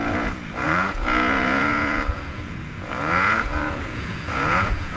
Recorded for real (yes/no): no